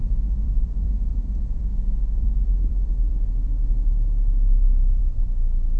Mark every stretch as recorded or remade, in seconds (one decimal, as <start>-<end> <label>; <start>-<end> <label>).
0.0-3.6 remade; 3.6-5.0 recorded; 5.0-5.8 remade